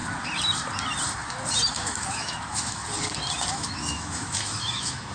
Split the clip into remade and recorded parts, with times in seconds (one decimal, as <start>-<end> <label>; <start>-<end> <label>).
0.0-1.7 recorded; 1.7-2.8 remade; 2.8-3.5 recorded; 3.5-5.1 remade